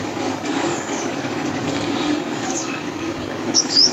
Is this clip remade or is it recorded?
remade